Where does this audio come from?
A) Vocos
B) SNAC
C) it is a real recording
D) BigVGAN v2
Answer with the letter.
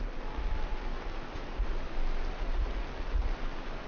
C